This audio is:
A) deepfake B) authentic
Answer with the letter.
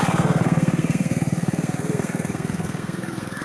A